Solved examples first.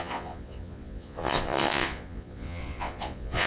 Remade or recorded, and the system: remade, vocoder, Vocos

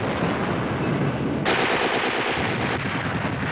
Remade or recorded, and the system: recorded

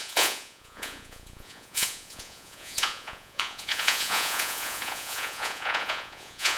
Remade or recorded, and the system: remade, vocoder, Vocos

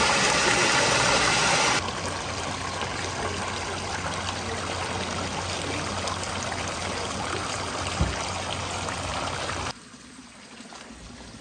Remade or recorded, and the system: recorded